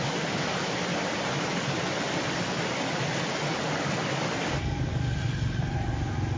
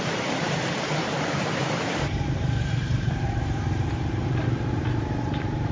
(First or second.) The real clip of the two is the first